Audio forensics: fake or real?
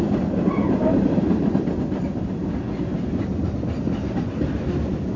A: real